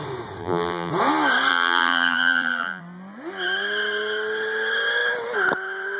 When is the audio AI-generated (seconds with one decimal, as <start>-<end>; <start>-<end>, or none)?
0.4-0.9; 1.5-2.8